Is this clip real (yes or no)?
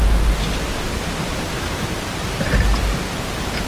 yes